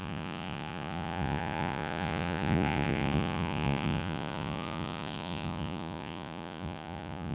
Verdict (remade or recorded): remade